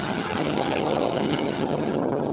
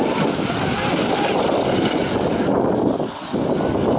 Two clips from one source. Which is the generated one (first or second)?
first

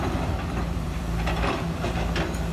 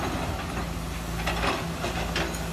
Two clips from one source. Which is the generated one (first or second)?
first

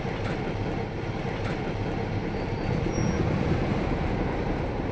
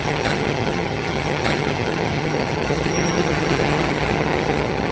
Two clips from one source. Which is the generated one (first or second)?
second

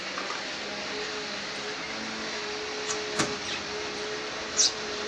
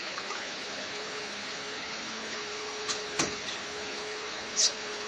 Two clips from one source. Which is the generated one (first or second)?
second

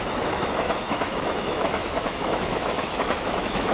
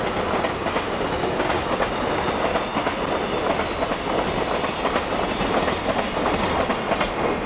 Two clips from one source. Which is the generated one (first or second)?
first